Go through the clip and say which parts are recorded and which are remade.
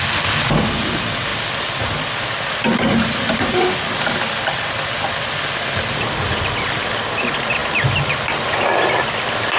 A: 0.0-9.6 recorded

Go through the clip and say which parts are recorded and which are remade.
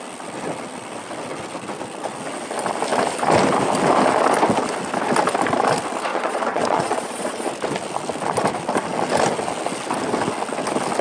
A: 0.0-6.1 recorded; 6.1-7.5 remade; 7.5-11.0 recorded